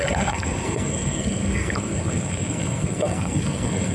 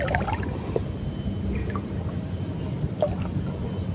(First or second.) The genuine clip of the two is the second